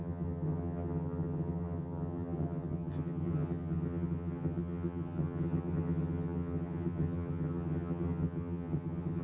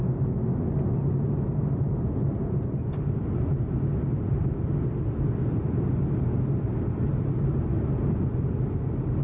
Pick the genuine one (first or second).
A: second